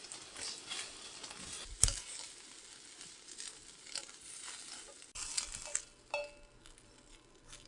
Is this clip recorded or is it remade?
recorded